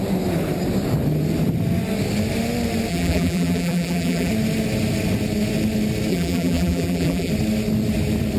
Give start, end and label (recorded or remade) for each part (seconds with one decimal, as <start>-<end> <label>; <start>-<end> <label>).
0.0-2.9 recorded; 2.9-4.3 remade; 4.3-6.1 recorded; 6.1-7.3 remade; 7.3-8.4 recorded